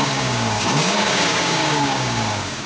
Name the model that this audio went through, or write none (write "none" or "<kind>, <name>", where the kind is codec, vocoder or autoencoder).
codec, DAC